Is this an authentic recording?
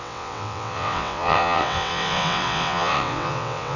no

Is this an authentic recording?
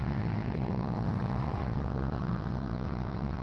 no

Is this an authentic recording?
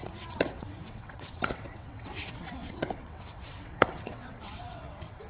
no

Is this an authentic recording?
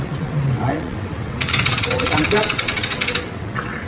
no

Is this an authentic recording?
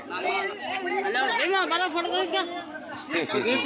yes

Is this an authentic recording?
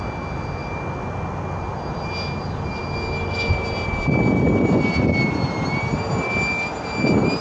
yes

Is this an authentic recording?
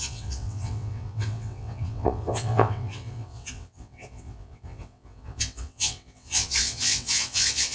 no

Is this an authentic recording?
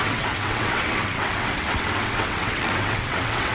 no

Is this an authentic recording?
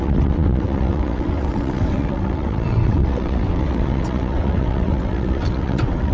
no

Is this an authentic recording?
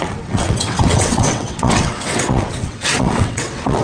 no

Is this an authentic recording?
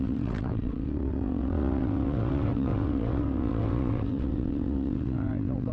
no